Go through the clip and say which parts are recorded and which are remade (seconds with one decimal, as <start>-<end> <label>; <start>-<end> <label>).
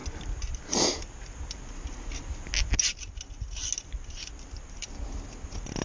0.0-5.8 recorded